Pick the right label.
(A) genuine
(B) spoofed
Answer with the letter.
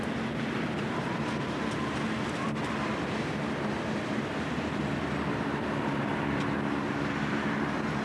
B